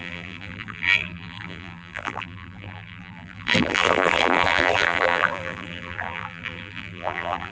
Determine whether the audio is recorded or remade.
remade